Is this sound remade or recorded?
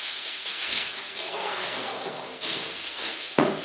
remade